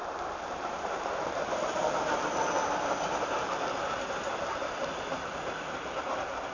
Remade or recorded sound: recorded